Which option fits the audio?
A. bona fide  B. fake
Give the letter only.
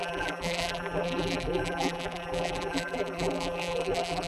B